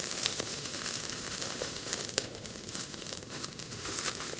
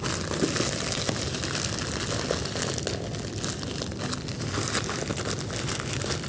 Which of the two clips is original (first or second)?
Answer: second